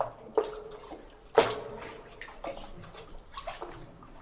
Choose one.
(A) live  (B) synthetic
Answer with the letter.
A